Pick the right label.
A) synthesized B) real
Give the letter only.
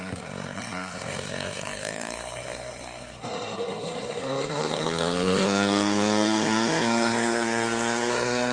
A